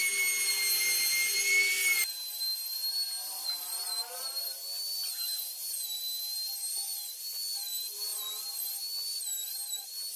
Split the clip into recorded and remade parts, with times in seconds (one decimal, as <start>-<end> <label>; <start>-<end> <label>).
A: 0.0-10.2 recorded